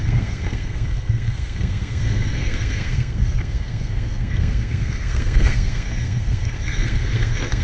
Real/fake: fake